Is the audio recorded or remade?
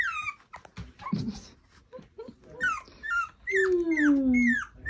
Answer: recorded